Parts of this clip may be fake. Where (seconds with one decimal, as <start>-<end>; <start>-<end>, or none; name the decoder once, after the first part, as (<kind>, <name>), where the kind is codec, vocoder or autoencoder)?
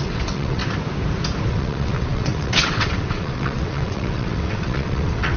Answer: 0.0-0.6 (vocoder, WaveNeXt); 1.5-5.4